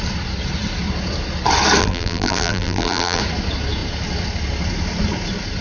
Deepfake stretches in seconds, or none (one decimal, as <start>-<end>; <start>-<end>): 1.8-3.2